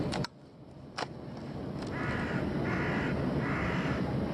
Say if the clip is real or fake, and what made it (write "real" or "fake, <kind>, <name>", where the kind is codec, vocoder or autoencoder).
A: real